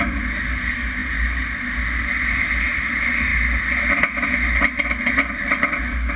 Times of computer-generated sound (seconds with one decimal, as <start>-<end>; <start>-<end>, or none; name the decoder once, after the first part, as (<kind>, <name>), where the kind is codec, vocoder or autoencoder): none